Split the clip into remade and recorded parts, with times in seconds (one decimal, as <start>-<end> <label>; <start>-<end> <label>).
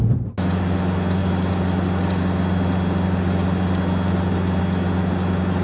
0.0-5.6 recorded